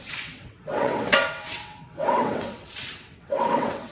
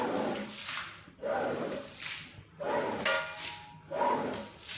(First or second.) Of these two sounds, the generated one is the first